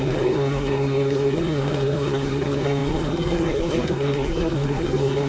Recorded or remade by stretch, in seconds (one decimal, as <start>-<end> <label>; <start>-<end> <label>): 0.0-5.3 remade

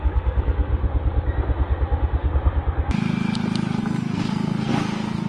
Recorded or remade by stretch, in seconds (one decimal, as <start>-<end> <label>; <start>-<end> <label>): 0.0-0.7 remade; 0.7-3.8 recorded; 3.8-5.3 remade

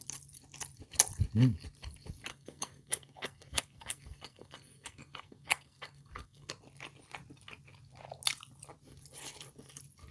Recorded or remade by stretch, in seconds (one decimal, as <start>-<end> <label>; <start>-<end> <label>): 0.0-2.3 recorded; 2.3-6.5 remade; 6.5-10.1 recorded

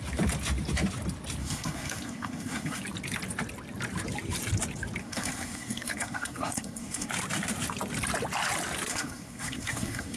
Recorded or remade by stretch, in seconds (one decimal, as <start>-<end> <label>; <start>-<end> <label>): 0.0-1.4 recorded; 1.4-2.8 remade; 2.8-5.0 recorded; 5.0-7.1 remade; 7.1-8.9 recorded; 8.9-10.2 remade

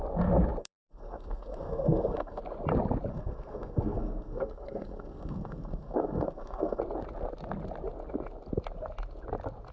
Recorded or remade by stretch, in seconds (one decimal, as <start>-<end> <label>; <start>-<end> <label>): 0.0-0.6 recorded; 0.6-2.4 remade; 2.4-3.1 recorded; 3.1-6.8 remade; 6.8-9.7 recorded

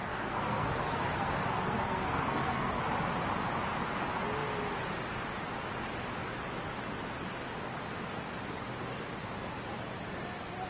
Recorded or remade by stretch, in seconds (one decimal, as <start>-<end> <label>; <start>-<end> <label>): 0.0-2.8 remade; 2.8-10.7 recorded

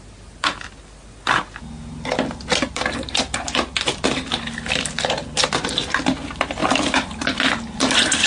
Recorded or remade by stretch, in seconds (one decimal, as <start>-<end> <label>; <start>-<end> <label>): 0.0-8.3 recorded

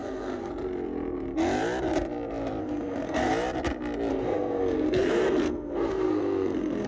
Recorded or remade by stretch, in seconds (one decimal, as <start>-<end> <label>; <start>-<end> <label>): 0.0-0.5 remade; 0.5-2.6 recorded; 2.6-3.3 remade; 3.3-4.1 recorded; 4.1-6.9 remade